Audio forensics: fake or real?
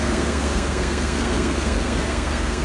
fake